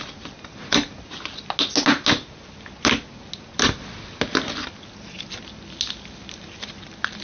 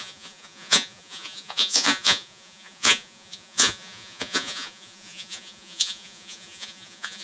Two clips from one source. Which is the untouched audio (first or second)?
first